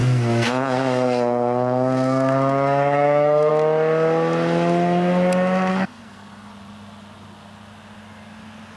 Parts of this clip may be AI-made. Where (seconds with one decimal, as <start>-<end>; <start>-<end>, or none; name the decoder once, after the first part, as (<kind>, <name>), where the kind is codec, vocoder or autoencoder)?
0.0-3.5 (codec, SNAC); 5.7-6.5